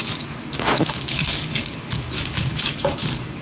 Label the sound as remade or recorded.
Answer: remade